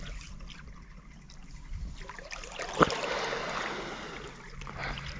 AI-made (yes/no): no